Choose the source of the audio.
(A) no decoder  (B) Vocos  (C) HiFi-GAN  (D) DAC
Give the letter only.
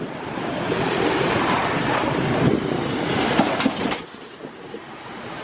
A